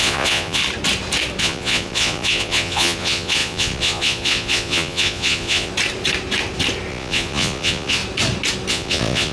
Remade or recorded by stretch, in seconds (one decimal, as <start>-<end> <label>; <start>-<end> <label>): 0.0-0.6 remade; 0.6-1.4 recorded; 1.4-5.7 remade; 5.7-6.9 recorded; 6.9-8.0 remade; 8.0-8.7 recorded; 8.7-9.3 remade